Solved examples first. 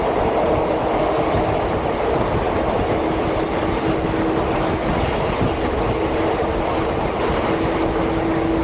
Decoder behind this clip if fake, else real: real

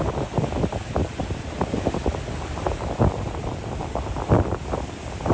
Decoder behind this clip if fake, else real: real